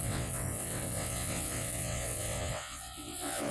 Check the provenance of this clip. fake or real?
fake